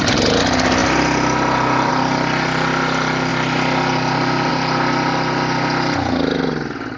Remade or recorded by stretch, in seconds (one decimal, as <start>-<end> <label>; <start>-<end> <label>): 0.0-7.0 recorded